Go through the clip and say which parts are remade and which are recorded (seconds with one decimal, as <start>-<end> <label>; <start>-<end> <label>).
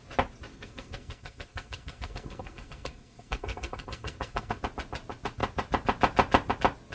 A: 0.0-0.5 recorded; 0.5-4.6 remade; 4.6-6.9 recorded